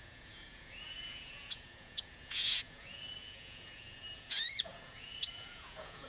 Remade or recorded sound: remade